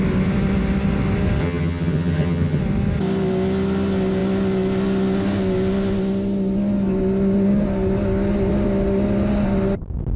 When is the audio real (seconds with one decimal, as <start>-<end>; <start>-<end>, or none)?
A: 0.0-1.4; 2.6-10.2